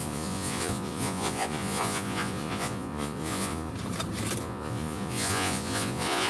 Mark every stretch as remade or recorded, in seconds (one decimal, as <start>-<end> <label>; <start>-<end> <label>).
0.0-3.7 remade; 3.7-4.4 recorded; 4.4-6.3 remade